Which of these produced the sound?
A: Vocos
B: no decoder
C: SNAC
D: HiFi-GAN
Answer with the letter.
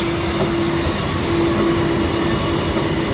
B